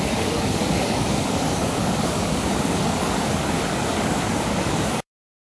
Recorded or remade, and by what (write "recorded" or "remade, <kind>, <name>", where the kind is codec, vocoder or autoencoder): remade, codec, DAC